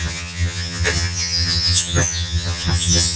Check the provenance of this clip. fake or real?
fake